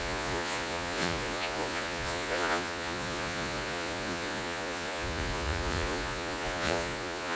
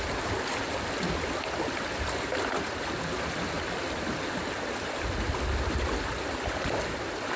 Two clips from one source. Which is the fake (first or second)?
first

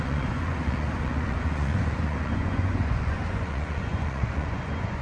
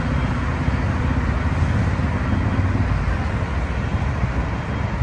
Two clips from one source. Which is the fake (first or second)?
first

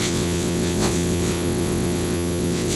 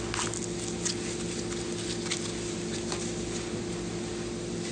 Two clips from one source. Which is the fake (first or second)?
first